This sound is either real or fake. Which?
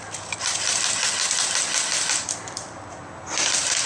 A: real